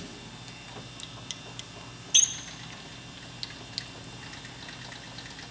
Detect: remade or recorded recorded